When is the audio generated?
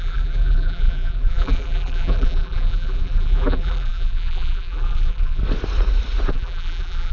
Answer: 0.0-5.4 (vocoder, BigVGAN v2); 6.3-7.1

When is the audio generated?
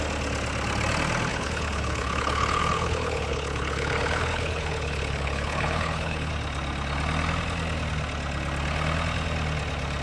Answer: 1.3-6.3 (codec, HILCodec)